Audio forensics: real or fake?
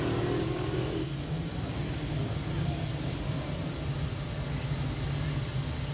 real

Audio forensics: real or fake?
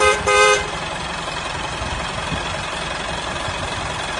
fake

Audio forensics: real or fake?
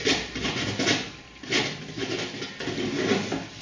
real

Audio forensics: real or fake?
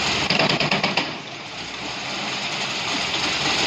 real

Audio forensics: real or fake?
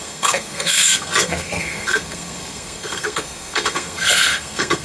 fake